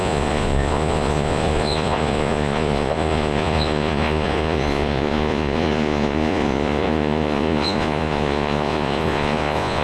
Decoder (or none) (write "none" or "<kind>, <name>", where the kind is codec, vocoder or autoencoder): vocoder, Vocos